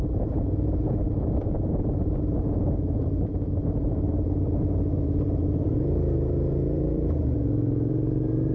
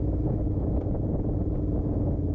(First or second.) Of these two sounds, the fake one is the first